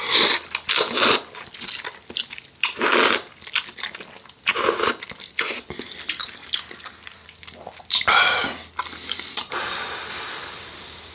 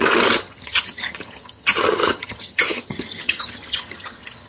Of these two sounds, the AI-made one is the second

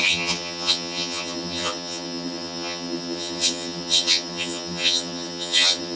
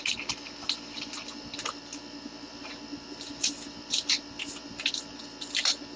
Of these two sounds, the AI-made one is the first